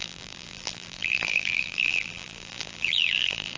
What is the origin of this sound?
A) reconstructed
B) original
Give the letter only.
A